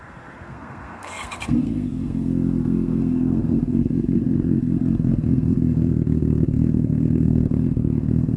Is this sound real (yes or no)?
no